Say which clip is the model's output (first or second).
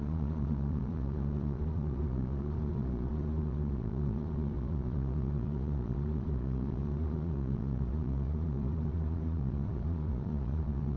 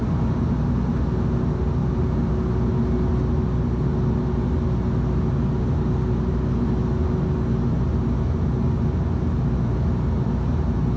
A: first